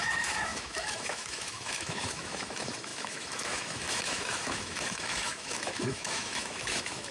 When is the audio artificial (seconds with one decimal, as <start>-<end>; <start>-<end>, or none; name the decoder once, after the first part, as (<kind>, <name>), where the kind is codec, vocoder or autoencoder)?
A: 0.0-7.1 (autoencoder, DAC-VAE)